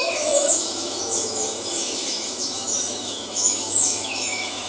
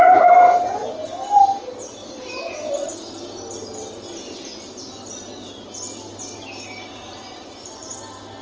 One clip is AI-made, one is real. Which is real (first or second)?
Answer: second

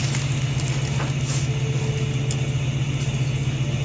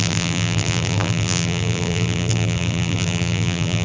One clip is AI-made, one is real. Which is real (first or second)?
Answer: first